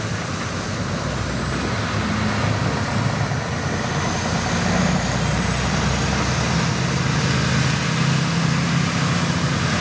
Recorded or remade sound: recorded